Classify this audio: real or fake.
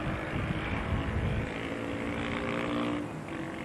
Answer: real